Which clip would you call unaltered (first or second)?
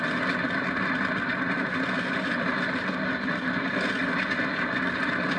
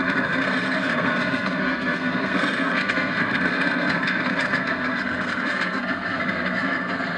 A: first